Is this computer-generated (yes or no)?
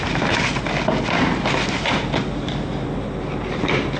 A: no